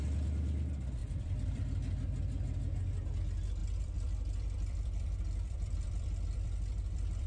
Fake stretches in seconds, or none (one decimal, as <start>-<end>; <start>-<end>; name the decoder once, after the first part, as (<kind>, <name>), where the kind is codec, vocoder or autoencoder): 1.0-1.6 (vocoder, BigVGAN v2); 3.6-7.3